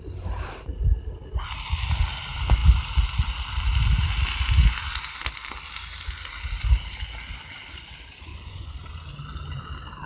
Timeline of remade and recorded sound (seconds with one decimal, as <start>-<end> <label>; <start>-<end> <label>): 0.0-8.3 recorded; 8.3-8.9 remade; 8.9-10.1 recorded